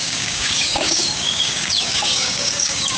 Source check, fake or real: fake